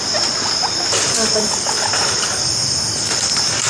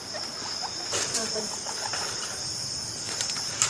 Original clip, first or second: first